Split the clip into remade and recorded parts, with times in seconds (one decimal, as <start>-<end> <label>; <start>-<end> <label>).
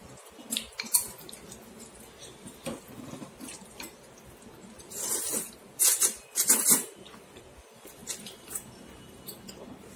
0.0-10.0 recorded